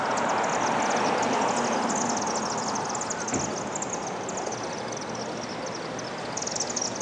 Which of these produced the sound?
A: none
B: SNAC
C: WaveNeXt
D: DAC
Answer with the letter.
A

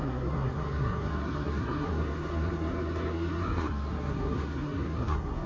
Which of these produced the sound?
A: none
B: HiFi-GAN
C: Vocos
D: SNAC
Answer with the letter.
D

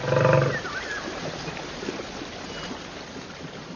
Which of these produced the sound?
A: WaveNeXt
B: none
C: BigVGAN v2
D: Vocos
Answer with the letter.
B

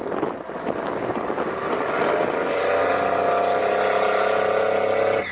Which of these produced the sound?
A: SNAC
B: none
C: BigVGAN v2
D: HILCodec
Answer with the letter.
B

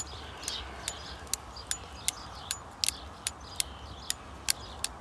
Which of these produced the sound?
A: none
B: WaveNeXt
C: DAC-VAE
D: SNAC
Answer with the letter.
A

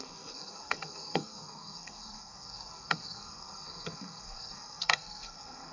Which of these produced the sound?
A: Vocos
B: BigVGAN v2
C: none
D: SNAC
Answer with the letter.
D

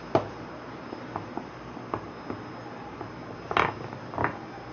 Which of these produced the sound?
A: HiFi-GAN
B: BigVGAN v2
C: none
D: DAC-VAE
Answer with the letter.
C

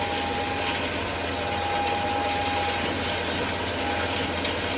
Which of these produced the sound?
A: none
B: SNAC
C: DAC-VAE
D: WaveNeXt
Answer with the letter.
A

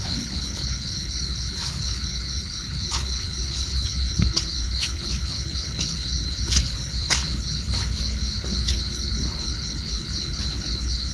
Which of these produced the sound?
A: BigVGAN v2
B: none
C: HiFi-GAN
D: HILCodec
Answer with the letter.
D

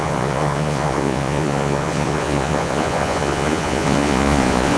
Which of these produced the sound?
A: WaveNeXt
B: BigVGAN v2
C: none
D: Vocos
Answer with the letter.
D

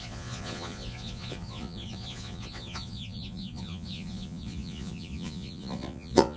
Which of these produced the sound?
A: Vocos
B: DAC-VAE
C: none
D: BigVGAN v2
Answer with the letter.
A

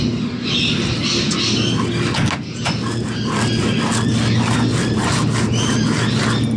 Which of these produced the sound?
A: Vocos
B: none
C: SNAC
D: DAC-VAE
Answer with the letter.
B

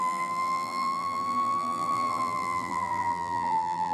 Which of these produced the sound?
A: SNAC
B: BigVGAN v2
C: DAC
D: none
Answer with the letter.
B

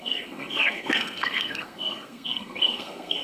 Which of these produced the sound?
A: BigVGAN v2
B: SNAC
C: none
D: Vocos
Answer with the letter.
B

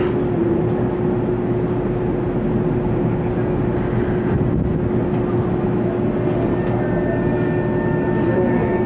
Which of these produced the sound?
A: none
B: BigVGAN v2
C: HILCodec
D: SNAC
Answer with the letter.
A